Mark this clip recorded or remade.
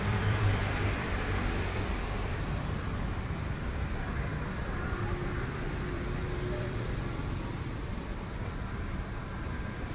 remade